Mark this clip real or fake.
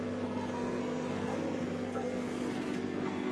fake